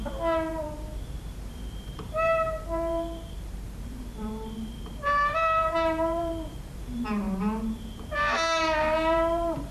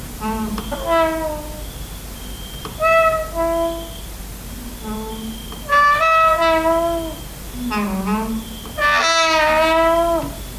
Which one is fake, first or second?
first